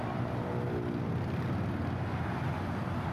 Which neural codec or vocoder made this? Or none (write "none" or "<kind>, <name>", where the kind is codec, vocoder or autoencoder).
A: none